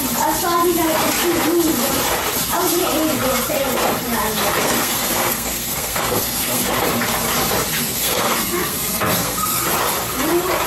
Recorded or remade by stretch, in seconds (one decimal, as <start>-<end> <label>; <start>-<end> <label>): 0.0-4.6 recorded; 4.6-6.6 remade; 6.6-7.8 recorded; 7.8-9.6 remade; 9.6-10.7 recorded